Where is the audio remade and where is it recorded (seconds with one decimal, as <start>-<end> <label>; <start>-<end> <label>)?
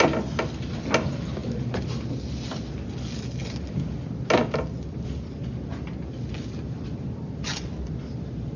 0.0-8.6 recorded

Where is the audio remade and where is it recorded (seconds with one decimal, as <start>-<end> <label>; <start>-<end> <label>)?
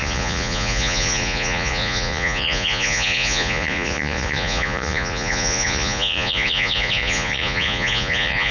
0.0-8.5 remade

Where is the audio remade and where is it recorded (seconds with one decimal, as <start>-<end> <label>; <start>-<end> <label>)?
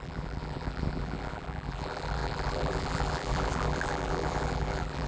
0.0-5.1 remade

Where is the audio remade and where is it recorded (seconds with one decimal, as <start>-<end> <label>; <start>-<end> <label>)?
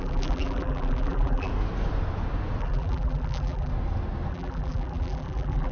0.0-1.5 remade; 1.5-2.6 recorded; 2.6-3.7 remade; 3.7-4.3 recorded; 4.3-5.7 remade